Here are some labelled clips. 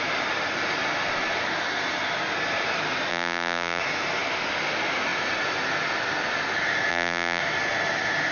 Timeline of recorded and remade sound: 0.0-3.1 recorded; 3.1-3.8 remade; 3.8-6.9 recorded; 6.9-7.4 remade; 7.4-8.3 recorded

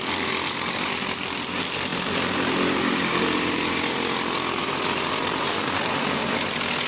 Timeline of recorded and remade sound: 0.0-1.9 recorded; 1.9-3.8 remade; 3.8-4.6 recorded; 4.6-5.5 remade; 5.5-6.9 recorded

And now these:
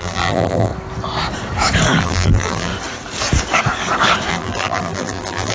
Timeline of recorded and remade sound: 0.0-0.7 remade; 0.7-2.0 recorded; 2.0-2.7 remade; 2.7-4.3 recorded; 4.3-5.5 remade

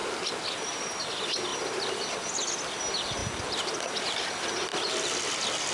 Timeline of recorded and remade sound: 0.0-5.7 recorded